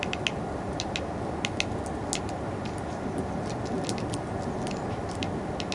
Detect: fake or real real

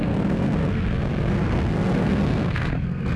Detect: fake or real fake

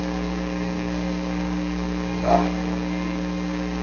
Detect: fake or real fake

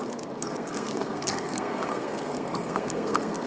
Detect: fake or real fake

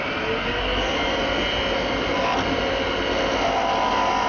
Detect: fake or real real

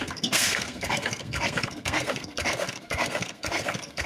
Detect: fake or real fake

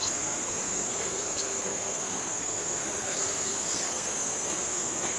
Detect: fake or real fake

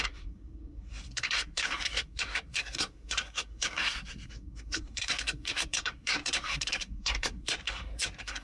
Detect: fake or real fake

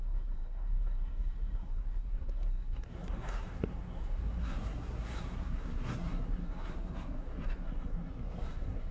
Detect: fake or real fake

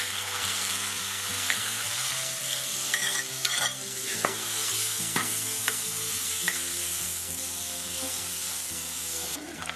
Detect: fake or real fake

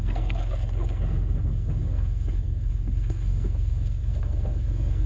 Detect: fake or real fake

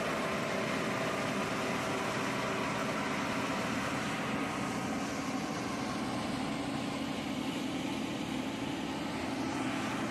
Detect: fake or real real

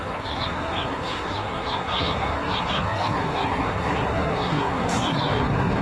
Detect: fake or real fake